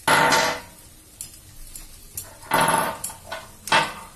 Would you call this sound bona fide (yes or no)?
yes